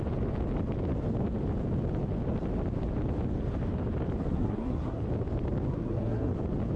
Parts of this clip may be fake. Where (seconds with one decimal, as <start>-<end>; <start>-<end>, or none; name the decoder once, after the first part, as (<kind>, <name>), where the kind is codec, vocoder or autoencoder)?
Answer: 4.2-5.0 (codec, SNAC); 5.7-6.3